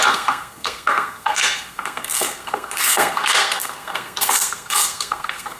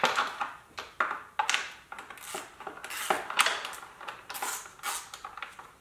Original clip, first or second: second